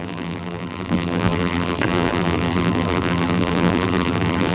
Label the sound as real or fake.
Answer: fake